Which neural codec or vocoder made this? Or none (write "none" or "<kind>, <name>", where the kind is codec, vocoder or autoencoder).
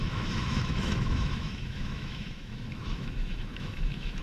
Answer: autoencoder, DAC-VAE